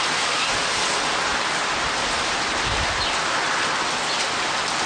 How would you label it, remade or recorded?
recorded